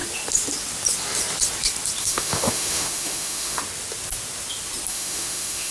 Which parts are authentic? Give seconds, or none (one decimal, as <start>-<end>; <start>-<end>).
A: 0.0-2.0; 3.6-4.9